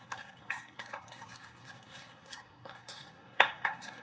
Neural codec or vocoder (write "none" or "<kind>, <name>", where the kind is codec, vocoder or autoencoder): codec, SNAC